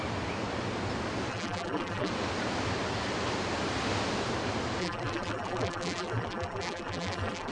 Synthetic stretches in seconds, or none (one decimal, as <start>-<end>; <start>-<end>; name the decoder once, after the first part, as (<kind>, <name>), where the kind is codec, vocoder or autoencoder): 1.3-2.1 (vocoder, BigVGAN v2); 4.8-7.5